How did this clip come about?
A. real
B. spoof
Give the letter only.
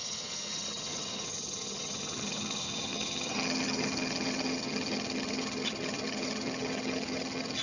B